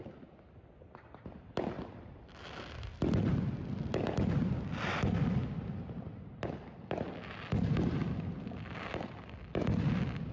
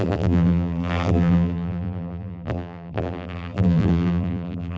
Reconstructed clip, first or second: second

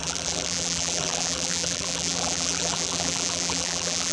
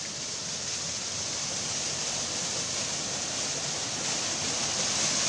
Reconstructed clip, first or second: first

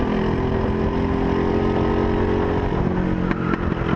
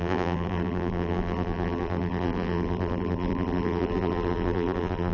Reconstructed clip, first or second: second